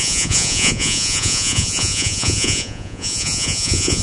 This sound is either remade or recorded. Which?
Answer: remade